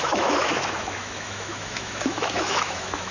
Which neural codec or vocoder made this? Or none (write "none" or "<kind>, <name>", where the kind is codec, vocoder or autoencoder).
autoencoder, DAC-VAE